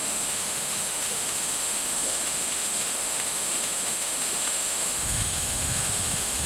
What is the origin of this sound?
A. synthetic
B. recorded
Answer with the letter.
A